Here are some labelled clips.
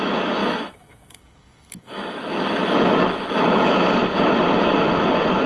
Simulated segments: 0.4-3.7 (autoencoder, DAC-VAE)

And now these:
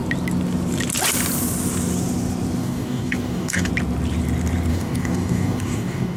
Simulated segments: 2.6-3.7 (codec, DAC); 4.7-6.2

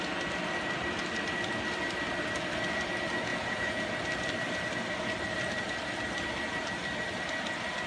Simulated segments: 3.3-3.8 (vocoder, Vocos)

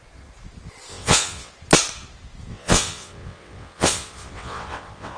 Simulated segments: 0.9-1.5 (vocoder, WaveNeXt); 2.5-5.2